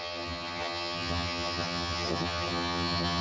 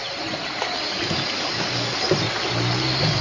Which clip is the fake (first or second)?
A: first